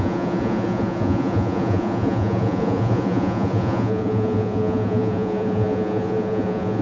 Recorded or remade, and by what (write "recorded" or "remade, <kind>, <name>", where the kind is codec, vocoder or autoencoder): remade, vocoder, Vocos